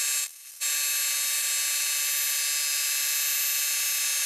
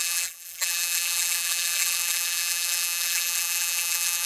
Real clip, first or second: first